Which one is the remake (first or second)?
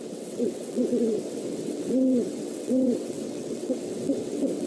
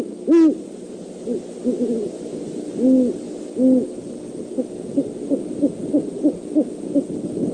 first